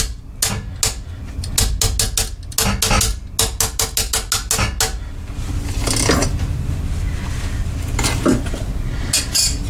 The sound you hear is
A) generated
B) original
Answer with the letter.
B